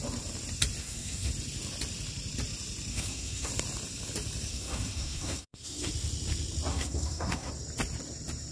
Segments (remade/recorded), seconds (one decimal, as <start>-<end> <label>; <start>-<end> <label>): 0.0-0.8 recorded; 0.8-1.3 remade; 1.3-2.9 recorded; 2.9-3.5 remade; 3.5-4.5 recorded; 4.5-5.9 remade; 5.9-6.7 recorded; 6.7-7.5 remade; 7.5-8.5 recorded

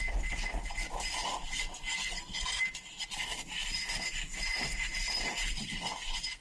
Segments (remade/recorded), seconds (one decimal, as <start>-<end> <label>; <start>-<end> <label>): 0.0-2.0 recorded; 2.0-2.6 remade; 2.6-6.4 recorded